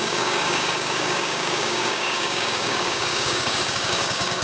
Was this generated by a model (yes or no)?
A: yes